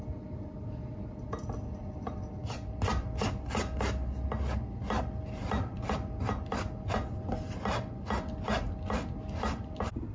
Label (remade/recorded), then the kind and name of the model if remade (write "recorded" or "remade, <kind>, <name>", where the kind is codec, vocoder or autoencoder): recorded